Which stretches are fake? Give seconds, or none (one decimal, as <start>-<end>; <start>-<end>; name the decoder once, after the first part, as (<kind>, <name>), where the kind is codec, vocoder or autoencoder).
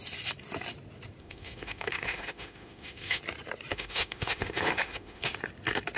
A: 1.2-3.2 (autoencoder, DAC-VAE); 3.7-5.3